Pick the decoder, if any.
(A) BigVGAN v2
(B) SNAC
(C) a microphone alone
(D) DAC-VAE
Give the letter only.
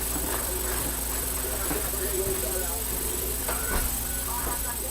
A